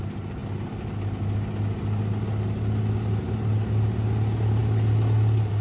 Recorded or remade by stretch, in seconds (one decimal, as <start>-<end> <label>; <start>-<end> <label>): 0.0-5.6 recorded